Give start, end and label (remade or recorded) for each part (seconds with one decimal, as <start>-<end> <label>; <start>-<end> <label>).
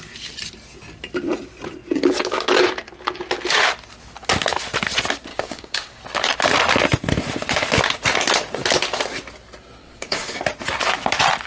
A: 0.0-5.3 recorded; 5.3-6.0 remade; 6.0-9.8 recorded; 9.8-10.4 remade; 10.4-11.5 recorded